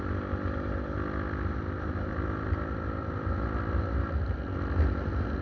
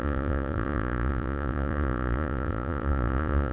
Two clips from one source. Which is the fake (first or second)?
second